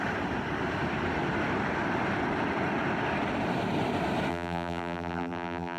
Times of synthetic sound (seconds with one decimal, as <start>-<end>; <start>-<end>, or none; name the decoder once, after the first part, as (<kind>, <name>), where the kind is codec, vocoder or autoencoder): 4.3-5.8 (vocoder, BigVGAN v2)